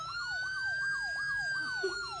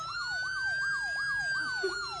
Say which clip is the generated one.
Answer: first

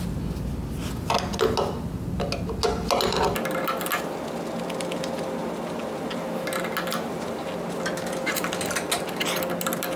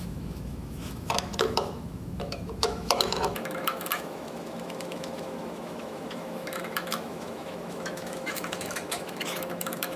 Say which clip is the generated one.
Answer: second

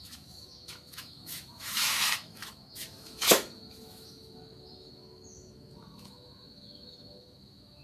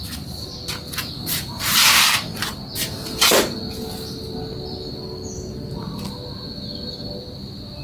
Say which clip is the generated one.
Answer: first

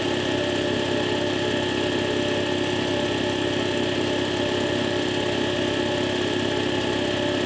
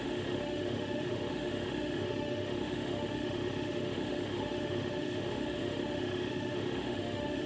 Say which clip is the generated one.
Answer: second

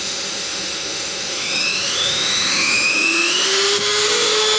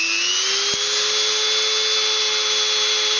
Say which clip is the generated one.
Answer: first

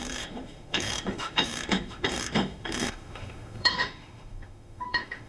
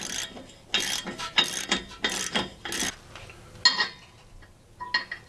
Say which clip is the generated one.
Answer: first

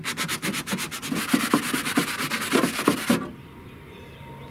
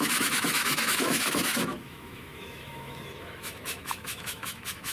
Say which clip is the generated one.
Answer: second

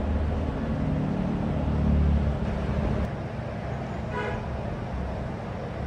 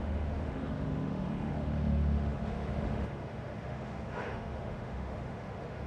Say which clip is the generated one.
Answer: second